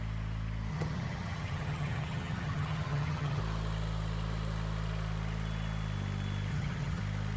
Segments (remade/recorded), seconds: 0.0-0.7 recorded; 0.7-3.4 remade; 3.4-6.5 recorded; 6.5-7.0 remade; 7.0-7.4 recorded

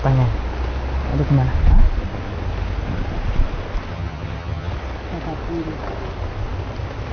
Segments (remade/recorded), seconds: 0.0-3.9 recorded; 3.9-4.7 remade; 4.7-7.1 recorded

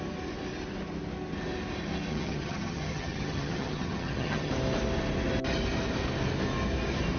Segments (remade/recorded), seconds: 0.0-2.1 recorded; 2.1-4.5 remade; 4.5-7.2 recorded

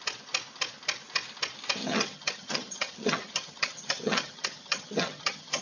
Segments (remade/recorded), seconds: 0.0-1.8 recorded; 1.8-5.6 remade

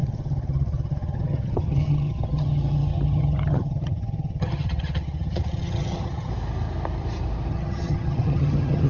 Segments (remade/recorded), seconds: 0.0-6.3 remade; 6.3-7.5 recorded; 7.5-8.9 remade